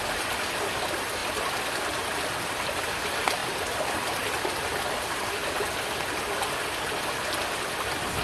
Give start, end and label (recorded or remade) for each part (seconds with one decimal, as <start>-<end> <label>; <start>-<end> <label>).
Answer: 0.0-1.2 recorded; 1.2-2.8 remade; 2.8-3.4 recorded; 3.4-4.5 remade; 4.5-8.2 recorded